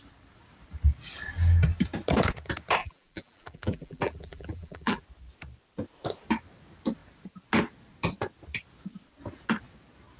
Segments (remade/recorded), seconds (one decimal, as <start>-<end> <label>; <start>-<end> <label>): 0.0-2.8 recorded; 2.8-5.0 remade; 5.0-10.2 recorded

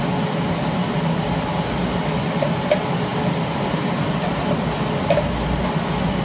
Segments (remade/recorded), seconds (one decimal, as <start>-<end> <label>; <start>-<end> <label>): 0.0-6.2 recorded

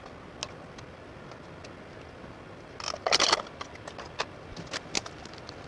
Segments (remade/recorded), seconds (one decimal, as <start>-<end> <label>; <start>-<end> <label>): 0.0-5.7 recorded

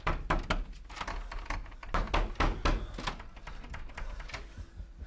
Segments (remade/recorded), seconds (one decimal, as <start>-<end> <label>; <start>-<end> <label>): 0.0-5.1 recorded